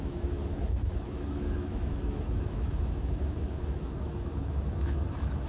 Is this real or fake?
fake